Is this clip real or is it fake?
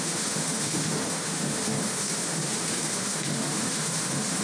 fake